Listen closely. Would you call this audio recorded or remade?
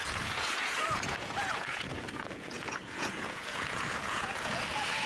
remade